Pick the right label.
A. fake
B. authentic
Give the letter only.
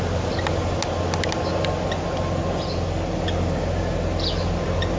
B